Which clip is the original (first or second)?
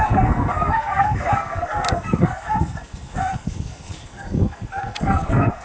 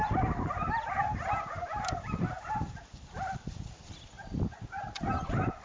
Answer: second